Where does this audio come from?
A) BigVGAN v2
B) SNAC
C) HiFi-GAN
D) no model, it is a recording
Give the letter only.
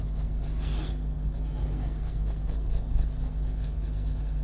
B